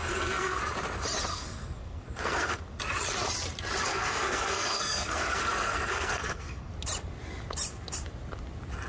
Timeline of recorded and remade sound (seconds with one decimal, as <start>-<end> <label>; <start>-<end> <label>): 0.0-0.6 remade; 0.6-1.3 recorded; 1.3-2.6 remade; 2.6-3.9 recorded; 3.9-6.7 remade; 6.7-8.9 recorded